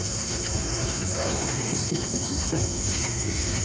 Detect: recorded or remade remade